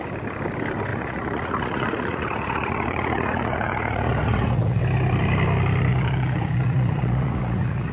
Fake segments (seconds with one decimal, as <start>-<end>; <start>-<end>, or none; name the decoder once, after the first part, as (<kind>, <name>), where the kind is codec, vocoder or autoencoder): 0.9-4.8 (vocoder, Vocos); 5.9-7.9